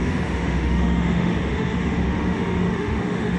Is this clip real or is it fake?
fake